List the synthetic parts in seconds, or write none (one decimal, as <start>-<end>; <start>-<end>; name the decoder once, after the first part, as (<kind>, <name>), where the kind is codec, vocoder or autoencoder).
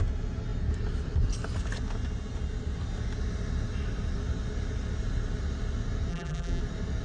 6.1-6.6 (vocoder, BigVGAN v2)